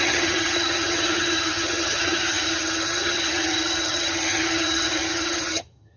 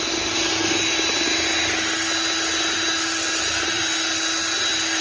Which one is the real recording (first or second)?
second